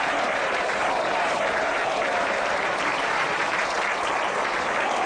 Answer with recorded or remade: remade